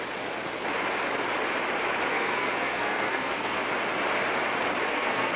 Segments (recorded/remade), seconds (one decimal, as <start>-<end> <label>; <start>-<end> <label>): 0.0-2.1 recorded; 2.1-3.6 remade; 3.6-4.9 recorded; 4.9-5.4 remade